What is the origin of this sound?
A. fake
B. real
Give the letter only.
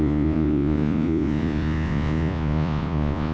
A